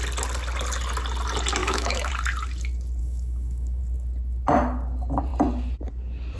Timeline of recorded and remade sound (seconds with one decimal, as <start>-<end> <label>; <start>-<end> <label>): 0.0-1.6 recorded; 1.6-2.1 remade; 2.1-3.0 recorded; 3.0-3.8 remade; 3.8-6.4 recorded